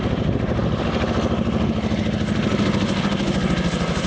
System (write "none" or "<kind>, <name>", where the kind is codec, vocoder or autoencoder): none